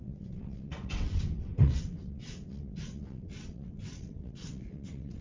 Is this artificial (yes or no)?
yes